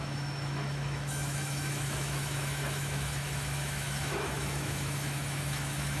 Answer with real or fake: fake